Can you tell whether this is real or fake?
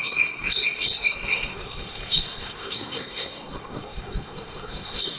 fake